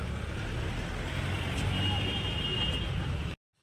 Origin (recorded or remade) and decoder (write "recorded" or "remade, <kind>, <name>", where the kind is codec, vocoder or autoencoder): recorded